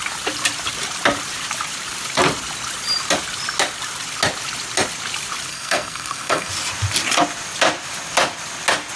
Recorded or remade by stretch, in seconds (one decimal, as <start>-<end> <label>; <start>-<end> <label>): 0.0-5.5 recorded; 5.5-6.5 remade; 6.5-9.0 recorded